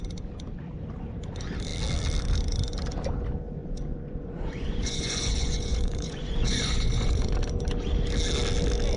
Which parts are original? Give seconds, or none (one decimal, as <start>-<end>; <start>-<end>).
0.0-3.6; 7.4-9.0